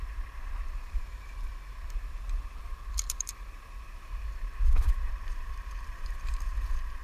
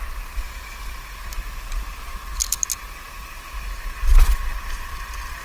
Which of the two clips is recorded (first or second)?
second